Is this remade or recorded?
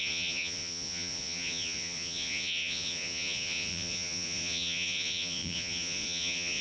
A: remade